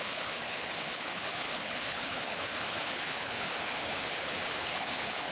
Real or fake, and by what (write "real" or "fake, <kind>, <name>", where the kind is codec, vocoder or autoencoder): fake, codec, HILCodec